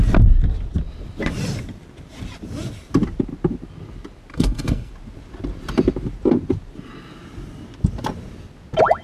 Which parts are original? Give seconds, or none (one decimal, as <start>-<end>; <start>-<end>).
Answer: 0.0-4.3; 4.9-9.0

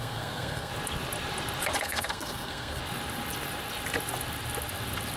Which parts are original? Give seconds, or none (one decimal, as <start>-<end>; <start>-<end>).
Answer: 0.7-1.8; 2.8-5.2

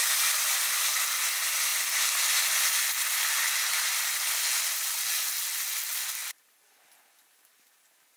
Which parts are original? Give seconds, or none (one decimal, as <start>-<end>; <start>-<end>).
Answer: 0.0-8.2

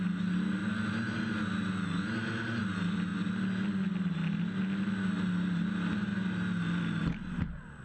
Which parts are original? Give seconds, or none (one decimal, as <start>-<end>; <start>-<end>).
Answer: 0.0-7.8

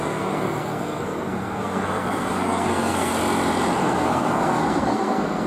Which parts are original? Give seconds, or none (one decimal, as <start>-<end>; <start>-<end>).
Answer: 3.1-3.8

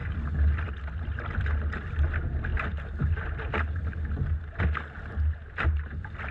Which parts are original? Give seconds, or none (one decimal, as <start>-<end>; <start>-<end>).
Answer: 0.0-6.3

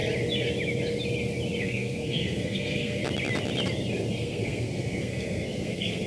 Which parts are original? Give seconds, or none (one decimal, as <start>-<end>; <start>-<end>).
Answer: 0.0-1.6; 3.0-4.2

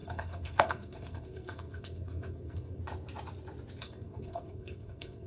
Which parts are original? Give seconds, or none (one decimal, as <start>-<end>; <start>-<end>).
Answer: 2.8-3.8